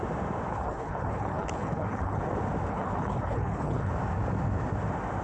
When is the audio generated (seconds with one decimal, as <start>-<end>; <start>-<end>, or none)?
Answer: 0.5-2.2; 2.7-3.9